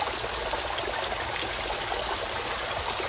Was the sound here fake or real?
real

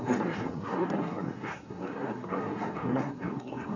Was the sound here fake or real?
fake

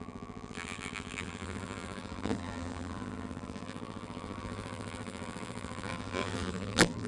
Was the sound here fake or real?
fake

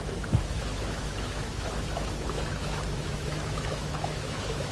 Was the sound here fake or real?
fake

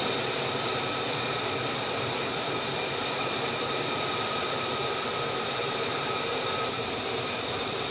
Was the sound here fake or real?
fake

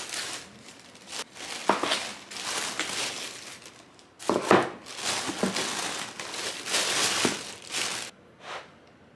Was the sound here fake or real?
real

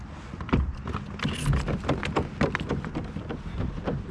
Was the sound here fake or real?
real